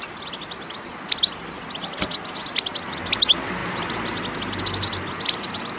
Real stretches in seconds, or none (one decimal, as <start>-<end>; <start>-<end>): 0.0-5.8